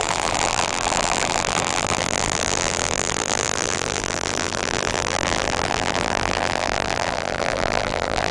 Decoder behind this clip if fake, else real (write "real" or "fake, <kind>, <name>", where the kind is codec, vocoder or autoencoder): fake, vocoder, BigVGAN v2